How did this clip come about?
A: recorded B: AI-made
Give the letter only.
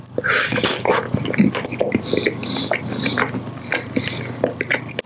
A